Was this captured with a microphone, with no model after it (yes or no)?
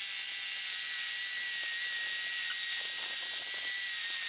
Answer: yes